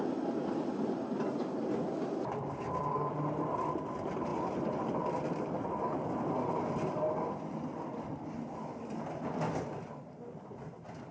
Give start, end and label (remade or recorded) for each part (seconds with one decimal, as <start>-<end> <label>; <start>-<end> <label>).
0.0-11.1 recorded